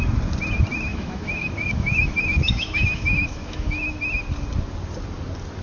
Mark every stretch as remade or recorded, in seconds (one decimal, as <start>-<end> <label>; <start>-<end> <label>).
0.0-0.9 recorded; 0.9-4.0 remade; 4.0-5.6 recorded